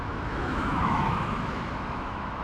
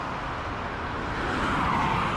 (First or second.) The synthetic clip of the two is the first